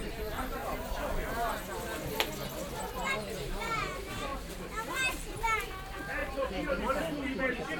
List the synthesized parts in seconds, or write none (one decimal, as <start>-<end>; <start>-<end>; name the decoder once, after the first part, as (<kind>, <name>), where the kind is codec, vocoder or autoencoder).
0.0-0.6 (vocoder, BigVGAN v2); 3.1-4.3; 4.9-7.8